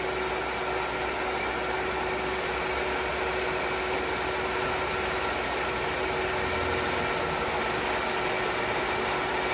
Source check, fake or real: real